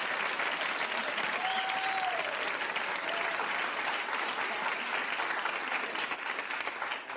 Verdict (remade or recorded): recorded